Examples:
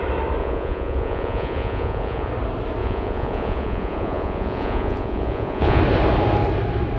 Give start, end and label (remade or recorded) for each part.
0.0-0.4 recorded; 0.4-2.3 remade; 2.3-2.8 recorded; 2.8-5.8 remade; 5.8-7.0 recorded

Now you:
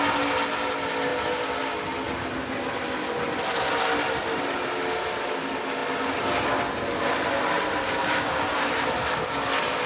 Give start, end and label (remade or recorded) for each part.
0.0-8.0 recorded; 8.0-8.7 remade; 8.7-9.9 recorded

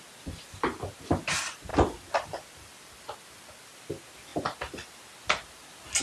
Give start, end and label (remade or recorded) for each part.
0.0-6.0 recorded

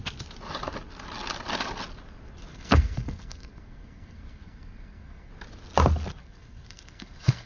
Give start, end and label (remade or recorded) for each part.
0.0-2.5 recorded; 2.5-5.3 remade; 5.3-6.2 recorded; 6.2-7.5 remade

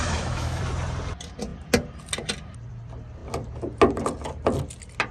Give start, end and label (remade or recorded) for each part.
0.0-0.6 remade; 0.6-5.1 recorded

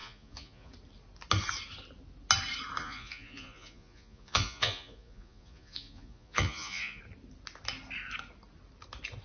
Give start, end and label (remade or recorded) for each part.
0.0-0.7 remade; 0.7-2.8 recorded; 2.8-7.0 remade; 7.0-9.2 recorded

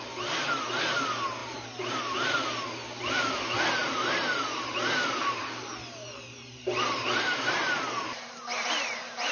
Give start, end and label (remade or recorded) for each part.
0.0-1.4 recorded; 1.4-2.0 remade; 2.0-3.8 recorded; 3.8-8.0 remade; 8.0-9.3 recorded

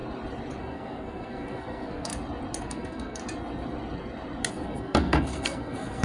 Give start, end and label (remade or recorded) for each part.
0.0-0.6 recorded; 0.6-2.1 remade; 2.1-2.6 recorded; 2.6-3.2 remade; 3.2-4.5 recorded; 4.5-6.0 remade